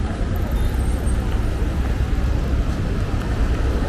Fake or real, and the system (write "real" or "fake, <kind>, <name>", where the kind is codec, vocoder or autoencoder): real